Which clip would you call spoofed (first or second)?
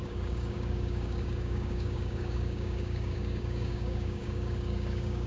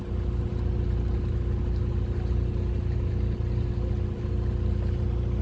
first